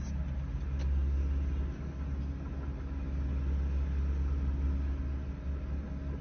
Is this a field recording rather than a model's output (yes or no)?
yes